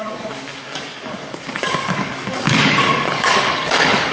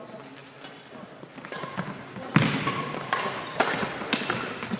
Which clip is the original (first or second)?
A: second